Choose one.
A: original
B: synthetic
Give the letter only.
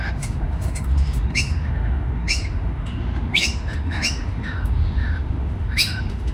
B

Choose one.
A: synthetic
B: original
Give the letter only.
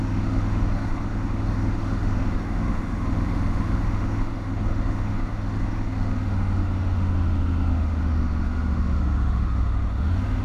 A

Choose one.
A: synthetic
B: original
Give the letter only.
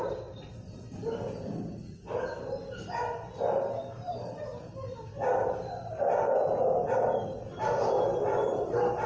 B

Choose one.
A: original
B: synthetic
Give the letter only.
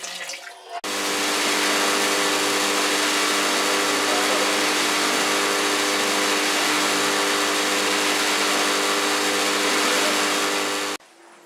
A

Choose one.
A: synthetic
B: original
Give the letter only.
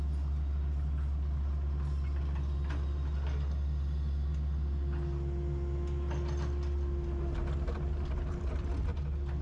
B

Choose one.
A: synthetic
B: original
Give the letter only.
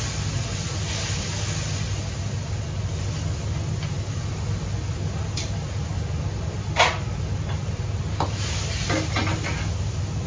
B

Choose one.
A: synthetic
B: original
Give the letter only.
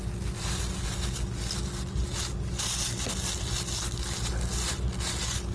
B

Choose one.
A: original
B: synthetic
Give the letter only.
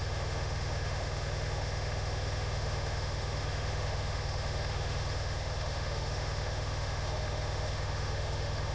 B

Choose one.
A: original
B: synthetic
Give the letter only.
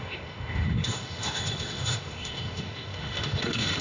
B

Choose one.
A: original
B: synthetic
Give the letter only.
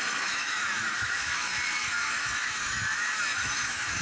B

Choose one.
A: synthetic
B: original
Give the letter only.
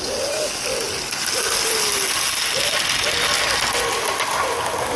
B